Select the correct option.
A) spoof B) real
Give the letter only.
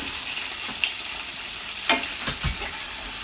B